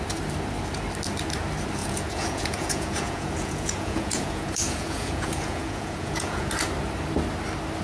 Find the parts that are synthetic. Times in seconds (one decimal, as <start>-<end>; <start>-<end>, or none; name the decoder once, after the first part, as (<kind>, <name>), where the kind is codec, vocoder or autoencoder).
1.8-6.5 (vocoder, Vocos)